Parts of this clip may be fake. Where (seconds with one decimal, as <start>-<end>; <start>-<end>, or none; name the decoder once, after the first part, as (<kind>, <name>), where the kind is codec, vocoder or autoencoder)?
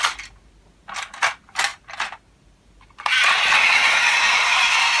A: 3.5-4.2 (vocoder, WaveNeXt)